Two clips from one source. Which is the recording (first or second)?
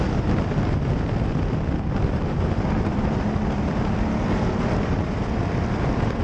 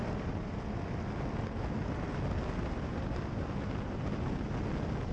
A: second